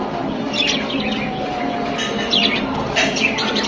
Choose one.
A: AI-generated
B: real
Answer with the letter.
B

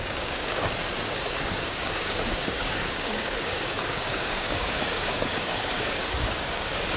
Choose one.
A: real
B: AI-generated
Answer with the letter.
B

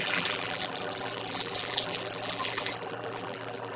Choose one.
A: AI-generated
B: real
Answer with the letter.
A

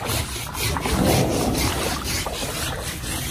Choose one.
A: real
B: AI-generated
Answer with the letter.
A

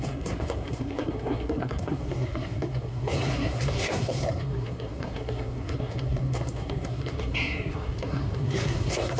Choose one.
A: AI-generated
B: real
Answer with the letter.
A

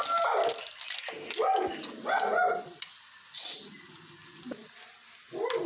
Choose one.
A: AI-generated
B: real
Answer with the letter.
B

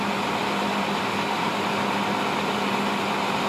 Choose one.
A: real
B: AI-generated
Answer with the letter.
A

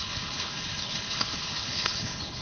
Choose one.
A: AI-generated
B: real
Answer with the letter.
A